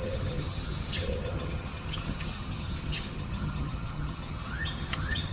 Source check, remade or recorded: remade